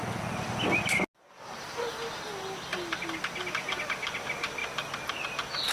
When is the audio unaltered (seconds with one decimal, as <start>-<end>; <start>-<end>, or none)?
0.0-5.7